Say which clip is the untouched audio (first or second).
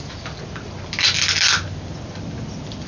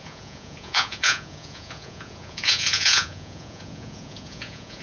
first